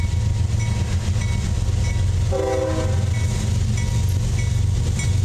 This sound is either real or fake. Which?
real